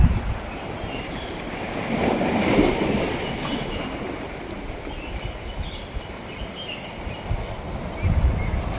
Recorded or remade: recorded